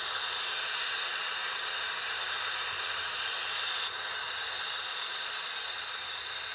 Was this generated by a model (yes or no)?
yes